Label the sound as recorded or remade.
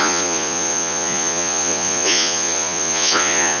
remade